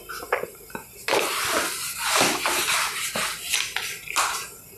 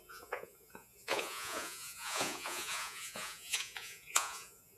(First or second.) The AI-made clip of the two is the second